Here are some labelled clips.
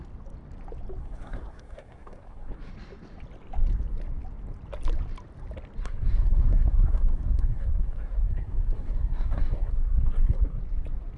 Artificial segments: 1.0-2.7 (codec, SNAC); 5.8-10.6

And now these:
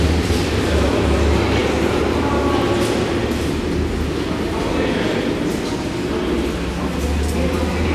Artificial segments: none

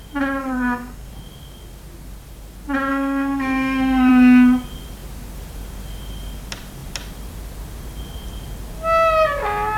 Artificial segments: 0.4-1.1 (codec, SNAC); 2.9-4.1